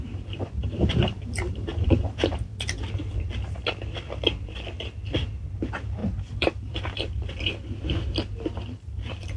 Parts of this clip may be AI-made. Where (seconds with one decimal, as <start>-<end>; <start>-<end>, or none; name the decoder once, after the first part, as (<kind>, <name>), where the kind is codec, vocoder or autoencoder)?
0.0-2.5 (vocoder, BigVGAN v2); 5.5-9.4